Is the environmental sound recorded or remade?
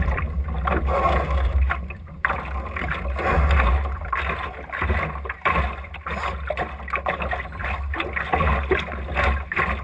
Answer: recorded